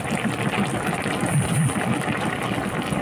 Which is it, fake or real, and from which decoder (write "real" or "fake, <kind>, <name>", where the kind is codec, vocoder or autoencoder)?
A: real